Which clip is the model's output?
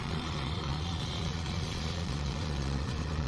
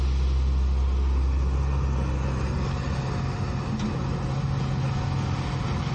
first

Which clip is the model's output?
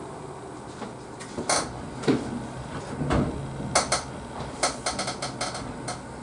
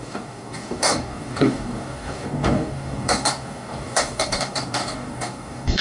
second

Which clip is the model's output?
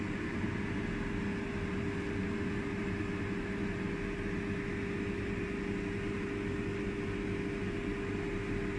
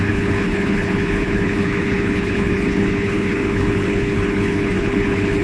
second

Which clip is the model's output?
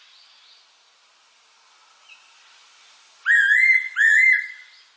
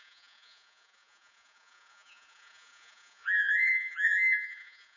second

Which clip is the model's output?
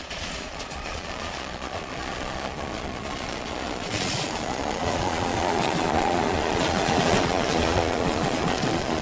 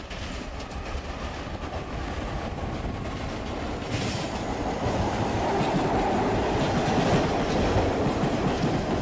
first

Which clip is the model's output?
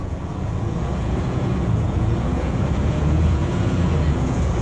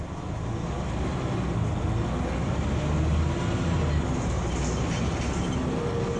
first